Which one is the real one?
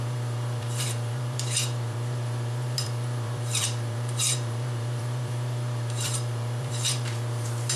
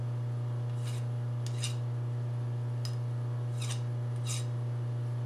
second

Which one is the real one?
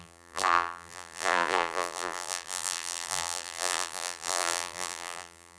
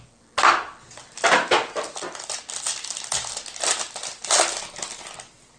second